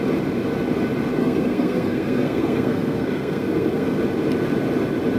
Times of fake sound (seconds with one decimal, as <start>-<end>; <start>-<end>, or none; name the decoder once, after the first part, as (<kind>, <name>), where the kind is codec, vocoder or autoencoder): 1.2-4.0 (codec, SNAC)